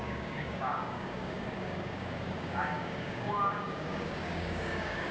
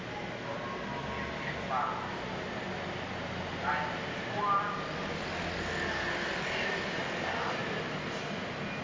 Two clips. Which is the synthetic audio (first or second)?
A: first